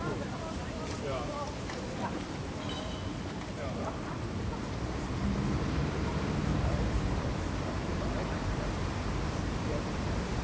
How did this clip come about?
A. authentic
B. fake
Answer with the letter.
B